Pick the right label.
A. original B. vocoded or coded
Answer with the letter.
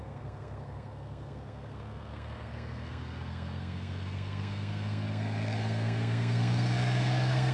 B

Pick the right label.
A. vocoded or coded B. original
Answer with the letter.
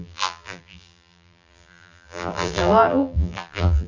A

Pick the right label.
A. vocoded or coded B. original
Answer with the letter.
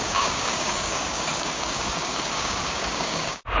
A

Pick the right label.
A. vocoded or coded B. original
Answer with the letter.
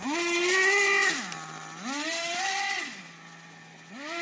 B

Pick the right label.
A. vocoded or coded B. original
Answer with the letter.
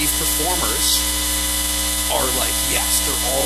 B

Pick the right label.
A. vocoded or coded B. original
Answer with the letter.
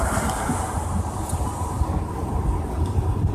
B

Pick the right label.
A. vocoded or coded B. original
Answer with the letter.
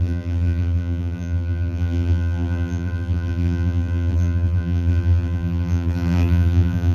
A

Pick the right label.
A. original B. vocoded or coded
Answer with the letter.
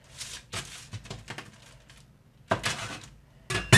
A